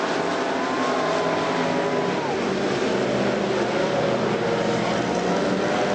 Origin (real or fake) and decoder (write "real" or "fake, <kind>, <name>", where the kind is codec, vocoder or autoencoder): real